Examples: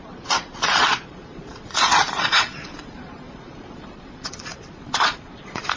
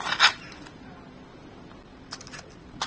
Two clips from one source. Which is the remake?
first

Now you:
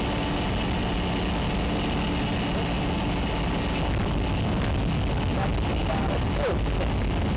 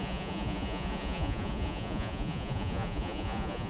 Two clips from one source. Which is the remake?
second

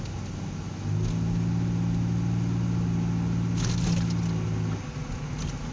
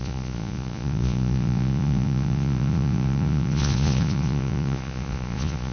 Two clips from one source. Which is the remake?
second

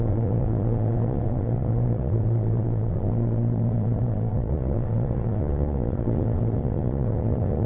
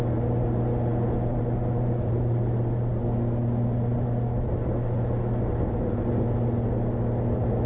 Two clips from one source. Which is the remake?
first